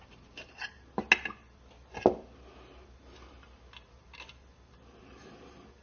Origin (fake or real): real